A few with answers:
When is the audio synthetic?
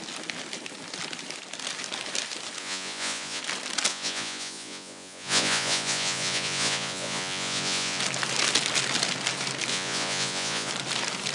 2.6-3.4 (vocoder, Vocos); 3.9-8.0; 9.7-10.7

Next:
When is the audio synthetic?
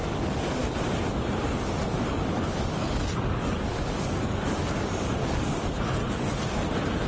0.0-0.6 (codec, DAC); 2.0-6.0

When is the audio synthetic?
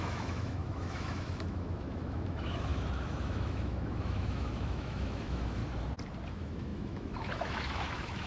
0.0-5.6 (autoencoder, DAC-VAE); 6.3-8.3